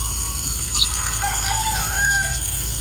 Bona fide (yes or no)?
no